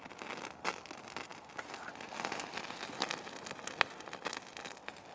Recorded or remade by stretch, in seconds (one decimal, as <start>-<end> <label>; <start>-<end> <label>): 0.0-5.1 recorded